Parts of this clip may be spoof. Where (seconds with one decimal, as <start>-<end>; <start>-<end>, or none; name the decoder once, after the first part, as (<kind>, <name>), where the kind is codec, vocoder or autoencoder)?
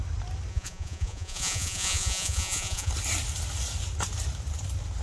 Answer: 0.5-2.9 (vocoder, Vocos)